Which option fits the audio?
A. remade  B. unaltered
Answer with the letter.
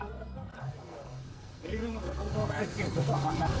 A